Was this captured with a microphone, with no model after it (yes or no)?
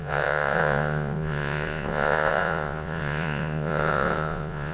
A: no